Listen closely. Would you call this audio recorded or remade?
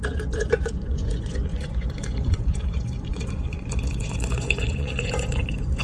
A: remade